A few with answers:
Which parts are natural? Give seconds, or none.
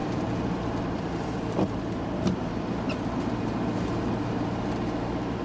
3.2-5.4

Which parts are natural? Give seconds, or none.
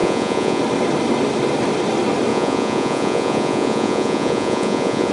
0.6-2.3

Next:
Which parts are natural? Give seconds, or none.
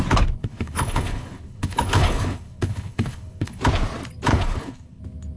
0.0-0.4; 3.6-4.3; 5.0-5.4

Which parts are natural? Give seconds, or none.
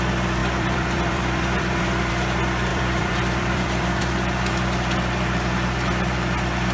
0.0-0.4; 2.1-2.7; 4.0-6.7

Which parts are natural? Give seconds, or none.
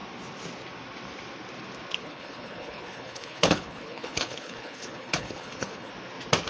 0.0-2.0; 5.9-6.5